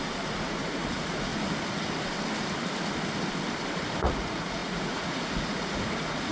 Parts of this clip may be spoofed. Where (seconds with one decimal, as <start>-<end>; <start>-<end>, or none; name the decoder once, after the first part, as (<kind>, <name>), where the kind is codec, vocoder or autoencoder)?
0.0-1.3 (vocoder, Vocos); 4.0-6.3